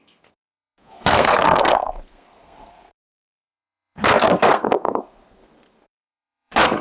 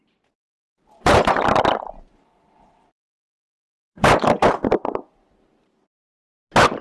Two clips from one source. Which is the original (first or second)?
second